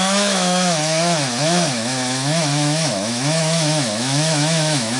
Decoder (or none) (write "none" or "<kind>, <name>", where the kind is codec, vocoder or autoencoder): autoencoder, DAC-VAE